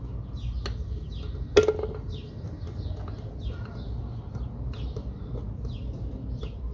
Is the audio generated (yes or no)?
no